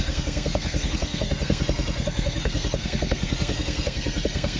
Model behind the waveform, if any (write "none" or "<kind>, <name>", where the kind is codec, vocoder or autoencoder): codec, SNAC